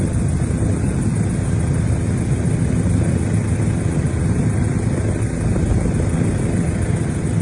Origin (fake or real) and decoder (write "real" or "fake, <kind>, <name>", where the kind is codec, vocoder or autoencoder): real